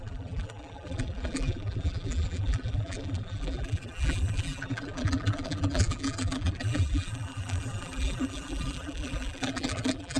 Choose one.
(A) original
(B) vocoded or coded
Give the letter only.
B